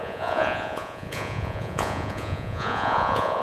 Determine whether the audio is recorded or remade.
remade